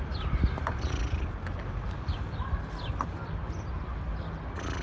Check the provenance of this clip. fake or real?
real